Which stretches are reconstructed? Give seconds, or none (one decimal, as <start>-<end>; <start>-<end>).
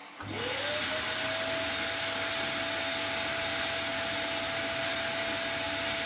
none